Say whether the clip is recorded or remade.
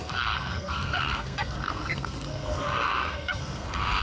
remade